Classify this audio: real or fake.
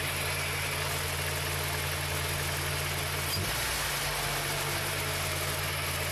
real